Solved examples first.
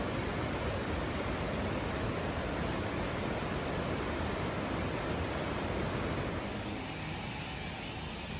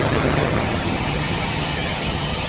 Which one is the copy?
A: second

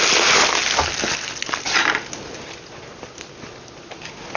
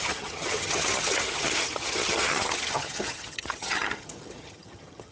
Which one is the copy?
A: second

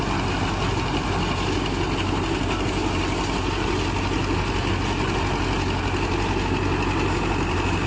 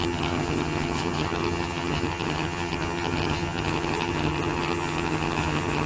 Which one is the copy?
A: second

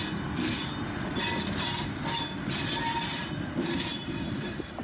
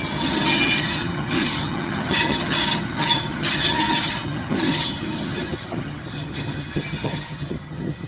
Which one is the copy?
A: second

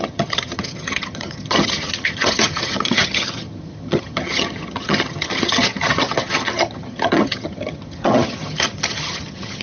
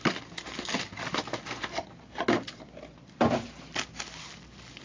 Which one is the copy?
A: first